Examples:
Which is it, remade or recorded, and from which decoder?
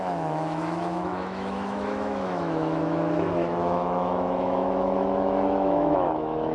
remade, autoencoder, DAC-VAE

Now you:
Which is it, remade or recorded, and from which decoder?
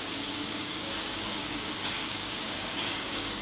remade, codec, DAC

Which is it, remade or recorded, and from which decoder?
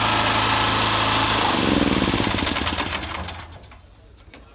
recorded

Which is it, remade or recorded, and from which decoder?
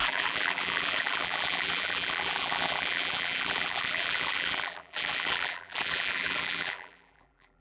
remade, vocoder, BigVGAN v2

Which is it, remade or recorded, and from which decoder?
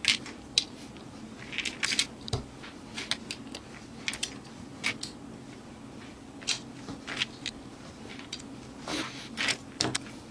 recorded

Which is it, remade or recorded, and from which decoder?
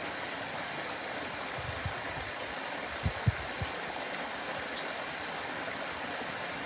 recorded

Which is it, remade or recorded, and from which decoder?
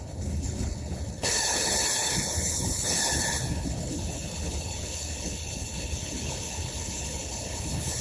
remade, codec, HILCodec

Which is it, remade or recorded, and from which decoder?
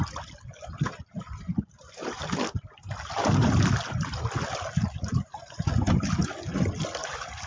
recorded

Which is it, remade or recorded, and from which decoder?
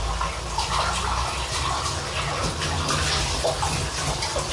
recorded